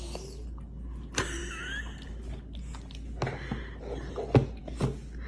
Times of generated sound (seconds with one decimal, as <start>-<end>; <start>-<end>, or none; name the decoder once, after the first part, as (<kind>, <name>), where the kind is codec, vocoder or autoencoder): none